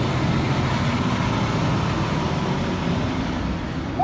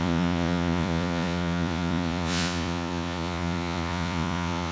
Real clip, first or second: first